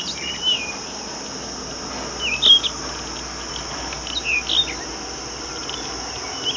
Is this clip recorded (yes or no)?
yes